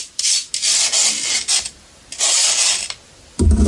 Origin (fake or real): real